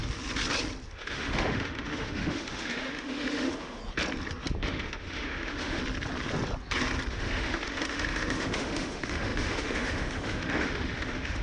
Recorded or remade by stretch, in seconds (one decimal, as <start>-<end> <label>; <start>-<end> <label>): 0.0-0.9 recorded; 0.9-3.8 remade; 3.8-4.6 recorded; 4.6-5.8 remade; 5.8-7.1 recorded; 7.1-11.4 remade